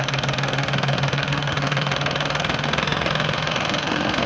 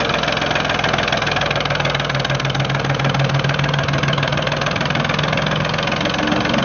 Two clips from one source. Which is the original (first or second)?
second